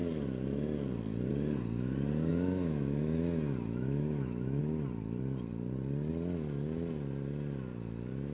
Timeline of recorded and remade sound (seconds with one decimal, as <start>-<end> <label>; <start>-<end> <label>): 0.0-2.3 recorded; 2.3-4.6 remade; 4.6-8.3 recorded